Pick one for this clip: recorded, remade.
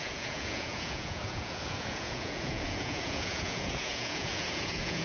remade